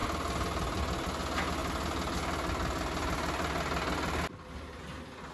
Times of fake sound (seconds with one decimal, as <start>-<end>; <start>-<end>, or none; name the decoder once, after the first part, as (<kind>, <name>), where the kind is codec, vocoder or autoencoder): none